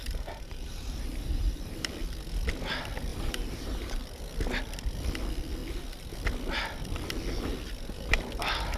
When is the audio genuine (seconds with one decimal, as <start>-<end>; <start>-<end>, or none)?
1.9-3.1; 3.9-8.8